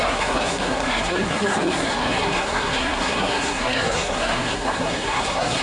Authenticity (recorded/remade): remade